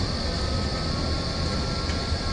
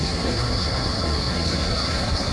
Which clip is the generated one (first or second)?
second